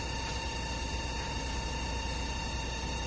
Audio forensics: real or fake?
real